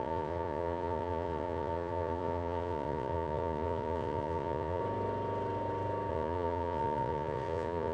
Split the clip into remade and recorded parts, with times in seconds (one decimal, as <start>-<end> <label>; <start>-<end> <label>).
0.0-4.8 remade; 4.8-6.1 recorded; 6.1-7.9 remade